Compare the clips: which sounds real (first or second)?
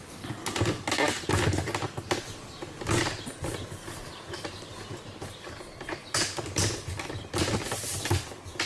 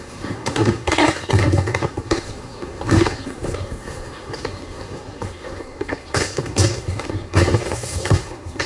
first